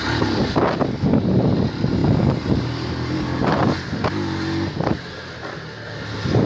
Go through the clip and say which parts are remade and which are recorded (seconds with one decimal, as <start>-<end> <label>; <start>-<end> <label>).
0.0-6.5 recorded